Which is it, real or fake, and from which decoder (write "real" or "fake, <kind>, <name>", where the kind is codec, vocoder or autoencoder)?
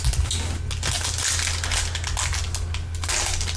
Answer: real